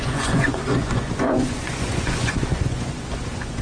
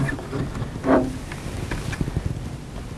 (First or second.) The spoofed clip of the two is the first